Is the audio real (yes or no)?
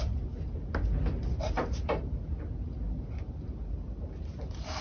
yes